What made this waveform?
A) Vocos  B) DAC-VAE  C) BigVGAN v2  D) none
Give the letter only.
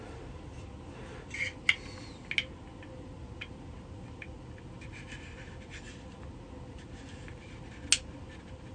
D